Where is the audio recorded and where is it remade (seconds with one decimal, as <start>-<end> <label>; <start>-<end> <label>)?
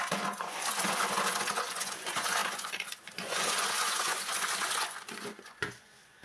0.0-6.2 remade